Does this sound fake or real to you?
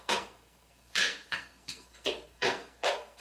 fake